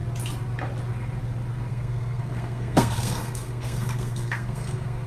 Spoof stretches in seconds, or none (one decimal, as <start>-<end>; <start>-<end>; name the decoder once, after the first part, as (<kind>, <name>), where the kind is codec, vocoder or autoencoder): 1.7-5.1 (codec, SNAC)